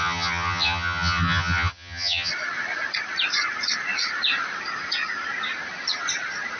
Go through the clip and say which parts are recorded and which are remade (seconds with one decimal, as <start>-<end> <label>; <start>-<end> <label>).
0.0-2.3 remade; 2.3-6.6 recorded